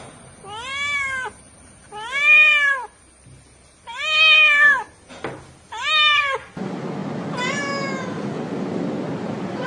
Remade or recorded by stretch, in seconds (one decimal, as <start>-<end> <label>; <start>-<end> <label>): 0.0-9.7 recorded